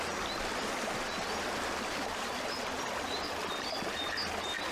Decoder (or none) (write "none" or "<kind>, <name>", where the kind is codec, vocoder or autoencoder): none